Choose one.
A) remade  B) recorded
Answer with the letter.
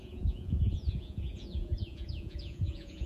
A